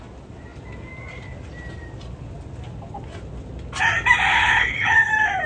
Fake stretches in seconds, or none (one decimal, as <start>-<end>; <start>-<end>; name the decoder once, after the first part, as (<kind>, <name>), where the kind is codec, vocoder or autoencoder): 4.3-5.1 (codec, HILCodec)